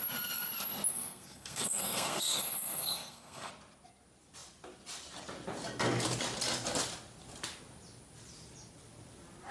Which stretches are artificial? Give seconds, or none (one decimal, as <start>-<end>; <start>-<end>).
0.9-3.5